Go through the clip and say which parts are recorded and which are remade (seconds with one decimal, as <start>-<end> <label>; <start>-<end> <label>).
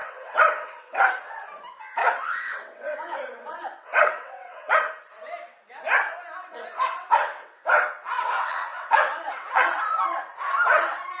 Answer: 0.0-1.1 remade; 1.1-2.0 recorded; 2.0-4.8 remade; 4.8-6.4 recorded; 6.4-9.8 remade; 9.8-11.2 recorded